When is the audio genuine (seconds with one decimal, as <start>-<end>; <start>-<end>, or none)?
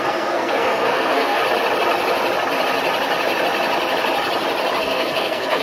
1.4-4.8